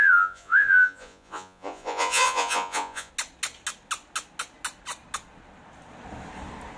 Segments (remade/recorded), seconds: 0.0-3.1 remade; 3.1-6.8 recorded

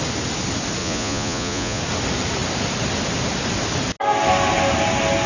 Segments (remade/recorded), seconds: 0.0-0.8 recorded; 0.8-1.8 remade; 1.8-5.3 recorded

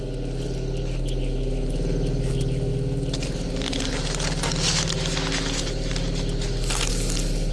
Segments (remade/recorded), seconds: 0.0-7.5 recorded

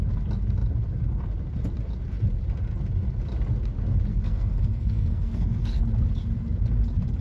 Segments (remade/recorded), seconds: 0.0-4.1 recorded; 4.1-5.8 remade; 5.8-7.2 recorded

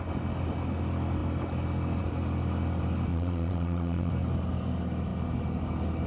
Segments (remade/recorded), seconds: 0.0-3.1 recorded; 3.1-4.1 remade; 4.1-6.1 recorded

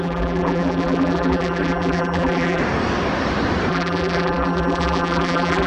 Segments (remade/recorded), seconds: 0.0-2.6 remade; 2.6-3.7 recorded; 3.7-5.7 remade